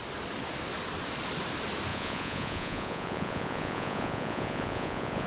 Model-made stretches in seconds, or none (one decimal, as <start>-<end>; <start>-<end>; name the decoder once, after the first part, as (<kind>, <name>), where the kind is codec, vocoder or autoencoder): 1.9-5.3 (vocoder, Vocos)